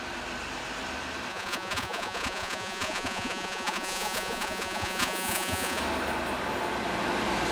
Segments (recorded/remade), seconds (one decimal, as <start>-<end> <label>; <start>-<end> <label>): 0.0-1.3 recorded; 1.3-5.8 remade; 5.8-7.5 recorded